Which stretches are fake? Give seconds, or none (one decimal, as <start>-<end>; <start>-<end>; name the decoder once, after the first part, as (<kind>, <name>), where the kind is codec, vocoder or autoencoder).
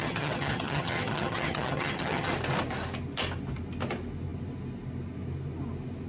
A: 0.0-2.3 (vocoder, HiFi-GAN)